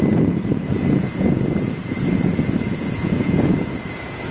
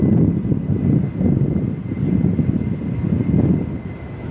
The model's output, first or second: first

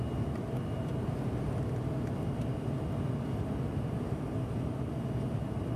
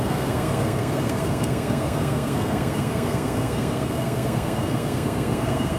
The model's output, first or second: second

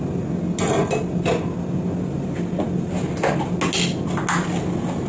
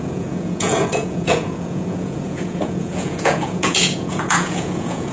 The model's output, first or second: second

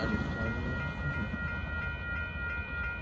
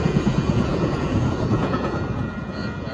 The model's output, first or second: second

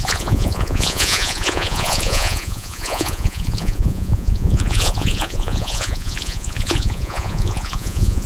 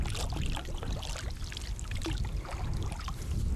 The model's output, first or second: first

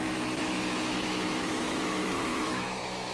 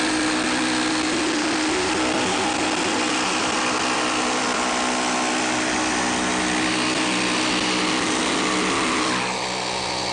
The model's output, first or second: first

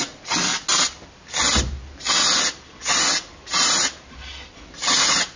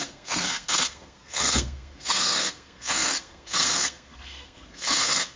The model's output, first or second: second